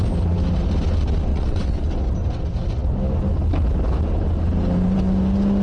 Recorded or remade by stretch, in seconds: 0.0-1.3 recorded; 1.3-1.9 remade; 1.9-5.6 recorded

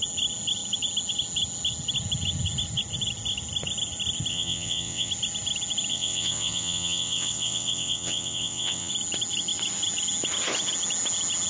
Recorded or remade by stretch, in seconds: 0.0-4.3 recorded; 4.3-5.1 remade; 5.1-5.9 recorded; 5.9-8.9 remade; 8.9-11.5 recorded

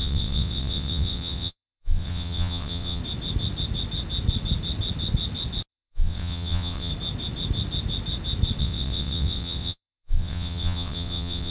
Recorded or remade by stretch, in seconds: 0.0-3.0 remade; 3.0-5.7 recorded; 5.7-6.9 remade; 6.9-8.6 recorded; 8.6-11.5 remade

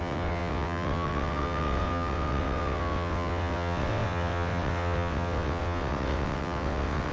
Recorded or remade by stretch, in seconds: 0.0-7.1 remade

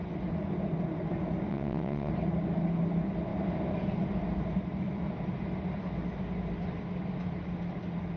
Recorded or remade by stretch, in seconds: 0.0-1.5 recorded; 1.5-2.1 remade; 2.1-8.2 recorded

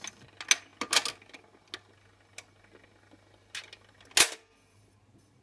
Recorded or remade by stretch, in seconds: 0.0-5.4 recorded

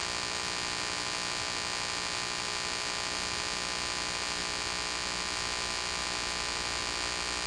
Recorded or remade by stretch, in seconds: 0.0-7.5 recorded

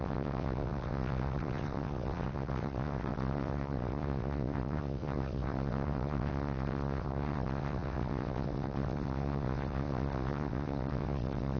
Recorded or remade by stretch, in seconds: 0.0-11.6 remade